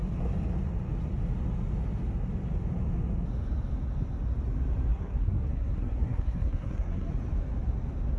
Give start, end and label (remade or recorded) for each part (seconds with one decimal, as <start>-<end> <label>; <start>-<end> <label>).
0.0-4.9 recorded; 4.9-7.1 remade; 7.1-8.2 recorded